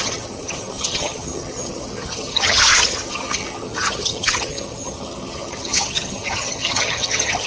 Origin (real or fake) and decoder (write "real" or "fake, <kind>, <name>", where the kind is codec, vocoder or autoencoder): fake, vocoder, HiFi-GAN